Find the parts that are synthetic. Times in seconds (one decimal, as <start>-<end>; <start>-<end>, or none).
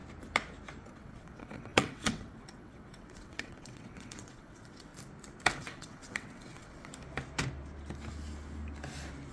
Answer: 0.9-4.9; 5.6-6.9